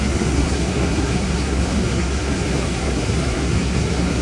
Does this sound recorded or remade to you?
remade